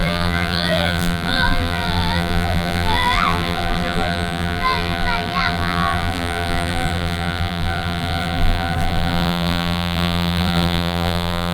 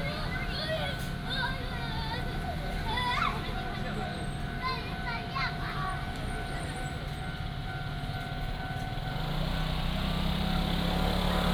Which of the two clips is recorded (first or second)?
second